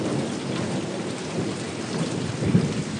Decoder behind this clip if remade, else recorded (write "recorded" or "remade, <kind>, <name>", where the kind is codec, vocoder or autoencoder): recorded